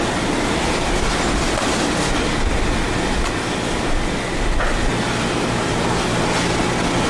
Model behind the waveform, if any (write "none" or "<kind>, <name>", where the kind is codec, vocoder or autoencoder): none